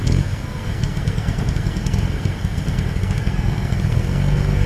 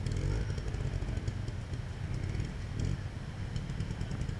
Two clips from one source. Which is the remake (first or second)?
first